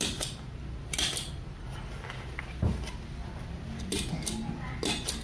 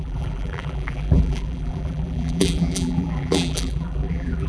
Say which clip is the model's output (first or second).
second